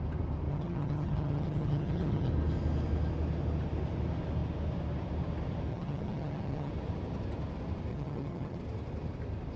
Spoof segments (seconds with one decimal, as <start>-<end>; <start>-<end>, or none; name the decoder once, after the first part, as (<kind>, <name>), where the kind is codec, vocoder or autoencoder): 0.5-2.3 (vocoder, HiFi-GAN); 5.7-6.7; 7.9-8.6